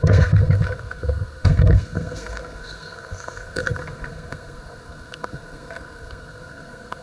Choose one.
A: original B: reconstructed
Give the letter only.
B